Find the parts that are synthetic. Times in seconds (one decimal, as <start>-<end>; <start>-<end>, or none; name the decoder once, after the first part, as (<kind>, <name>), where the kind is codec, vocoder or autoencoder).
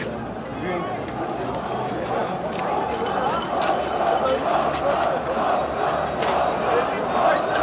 none